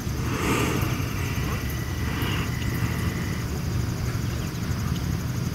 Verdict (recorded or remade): recorded